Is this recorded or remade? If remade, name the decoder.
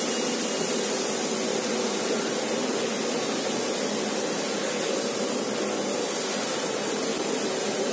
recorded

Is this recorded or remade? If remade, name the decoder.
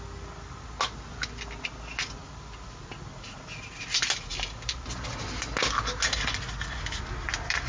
recorded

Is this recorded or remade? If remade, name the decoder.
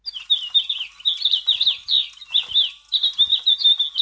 recorded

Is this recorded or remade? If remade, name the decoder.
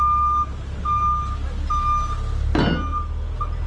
recorded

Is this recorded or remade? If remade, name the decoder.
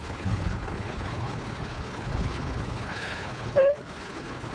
remade, codec, HILCodec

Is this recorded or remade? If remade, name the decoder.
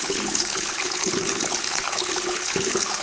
remade, codec, HILCodec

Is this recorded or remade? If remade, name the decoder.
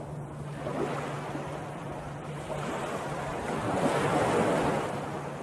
recorded